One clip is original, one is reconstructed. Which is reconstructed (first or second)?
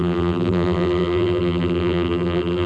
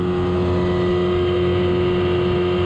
first